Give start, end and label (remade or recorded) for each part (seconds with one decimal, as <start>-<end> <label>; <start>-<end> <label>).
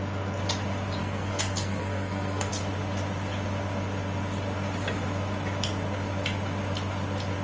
0.0-1.0 recorded; 1.0-2.5 remade; 2.5-7.4 recorded